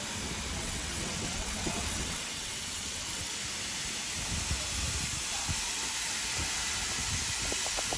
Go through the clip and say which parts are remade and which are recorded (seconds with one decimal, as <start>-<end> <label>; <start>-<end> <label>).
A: 0.0-0.6 recorded; 0.6-3.3 remade; 3.3-8.0 recorded